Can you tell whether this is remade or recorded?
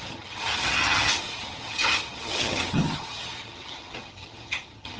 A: remade